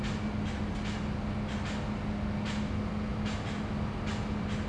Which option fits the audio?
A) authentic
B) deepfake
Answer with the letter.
A